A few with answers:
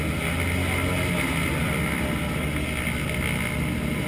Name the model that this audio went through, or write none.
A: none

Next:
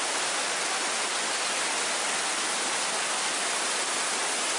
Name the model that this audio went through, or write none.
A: none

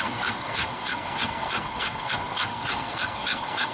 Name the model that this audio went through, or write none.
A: codec, SNAC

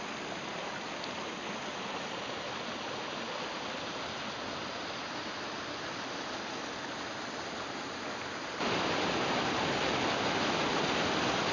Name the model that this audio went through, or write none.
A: none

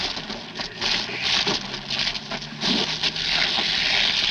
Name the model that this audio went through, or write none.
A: none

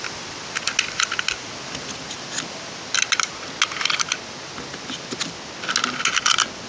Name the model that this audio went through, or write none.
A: none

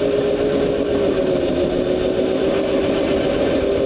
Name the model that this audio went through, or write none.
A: none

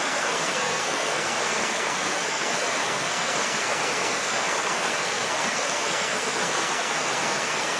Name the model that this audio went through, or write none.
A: codec, SNAC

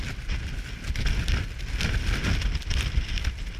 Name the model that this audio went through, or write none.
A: none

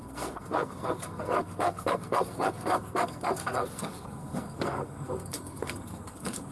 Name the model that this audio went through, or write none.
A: codec, SNAC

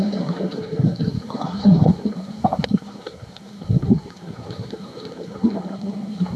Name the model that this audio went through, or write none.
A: codec, SNAC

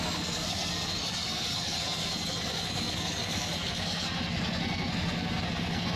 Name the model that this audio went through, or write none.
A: codec, SNAC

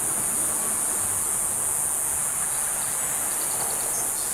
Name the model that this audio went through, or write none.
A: none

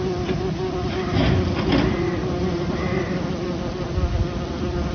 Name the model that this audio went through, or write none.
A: none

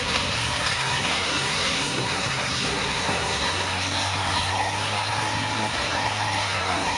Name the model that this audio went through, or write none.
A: codec, SNAC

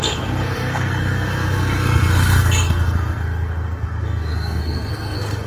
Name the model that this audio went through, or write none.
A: codec, SNAC